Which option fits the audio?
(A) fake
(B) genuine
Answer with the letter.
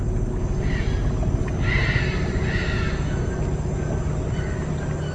B